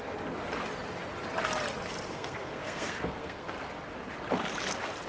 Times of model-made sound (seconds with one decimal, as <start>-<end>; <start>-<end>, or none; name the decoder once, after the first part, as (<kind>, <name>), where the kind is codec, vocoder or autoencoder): 2.1-3.5 (codec, SNAC)